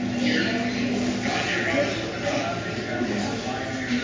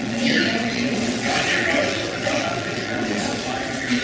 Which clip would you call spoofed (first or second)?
second